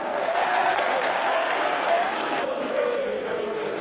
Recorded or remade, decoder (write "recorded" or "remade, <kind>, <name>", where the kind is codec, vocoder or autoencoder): remade, codec, SNAC